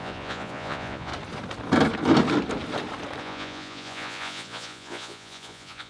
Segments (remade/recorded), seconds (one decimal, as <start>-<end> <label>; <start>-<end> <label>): 0.0-1.1 remade; 1.1-3.2 recorded; 3.2-5.9 remade